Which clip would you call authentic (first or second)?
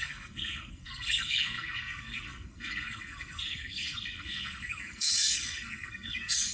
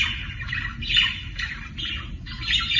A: second